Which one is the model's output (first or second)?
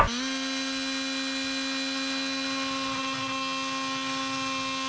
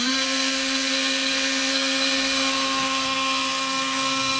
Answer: second